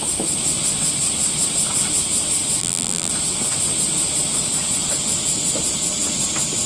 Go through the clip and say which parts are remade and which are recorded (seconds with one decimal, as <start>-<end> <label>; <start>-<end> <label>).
0.0-2.6 recorded; 2.6-3.1 remade; 3.1-6.7 recorded